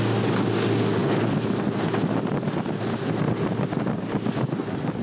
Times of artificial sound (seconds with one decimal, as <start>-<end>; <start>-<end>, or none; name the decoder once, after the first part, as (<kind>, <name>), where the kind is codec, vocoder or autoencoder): none